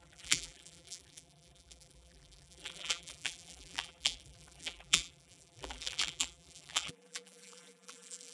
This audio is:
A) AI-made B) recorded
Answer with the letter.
A